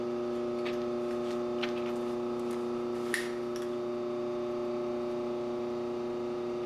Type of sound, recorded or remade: recorded